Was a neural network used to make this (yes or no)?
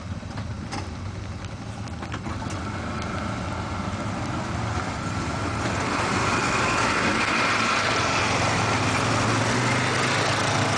no